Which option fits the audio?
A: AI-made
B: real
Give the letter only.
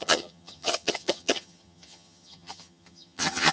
A